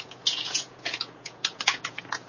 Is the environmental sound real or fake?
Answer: fake